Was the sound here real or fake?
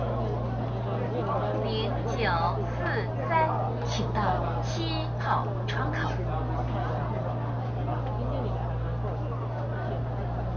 real